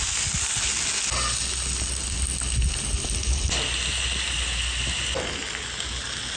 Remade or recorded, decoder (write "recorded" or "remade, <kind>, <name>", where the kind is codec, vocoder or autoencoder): recorded